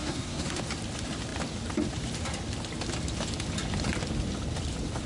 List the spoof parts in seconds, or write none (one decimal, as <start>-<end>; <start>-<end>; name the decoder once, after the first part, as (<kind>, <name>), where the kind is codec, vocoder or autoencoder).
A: 0.0-0.6 (codec, SNAC)